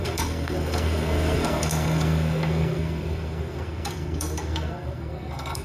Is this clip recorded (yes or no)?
no